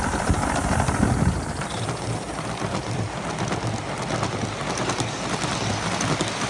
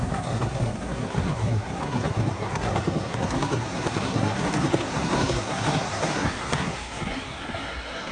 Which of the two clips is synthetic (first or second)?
second